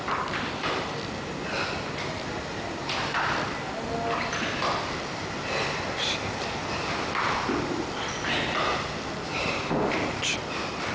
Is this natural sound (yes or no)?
yes